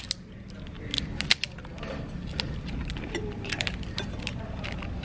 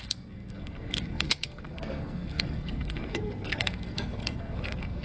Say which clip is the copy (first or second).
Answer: second